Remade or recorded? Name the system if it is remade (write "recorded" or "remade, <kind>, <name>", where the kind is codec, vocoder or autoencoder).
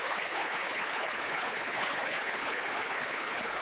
remade, codec, HILCodec